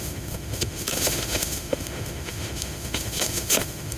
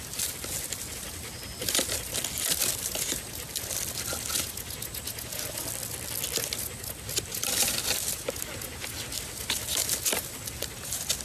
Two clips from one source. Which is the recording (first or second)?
second